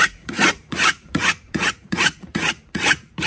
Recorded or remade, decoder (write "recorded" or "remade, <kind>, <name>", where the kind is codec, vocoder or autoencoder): remade, vocoder, Vocos